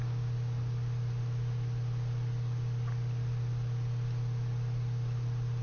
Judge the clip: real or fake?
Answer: real